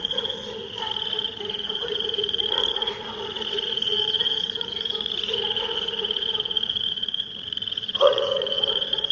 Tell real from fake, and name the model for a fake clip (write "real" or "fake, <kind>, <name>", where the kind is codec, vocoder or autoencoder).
fake, vocoder, Vocos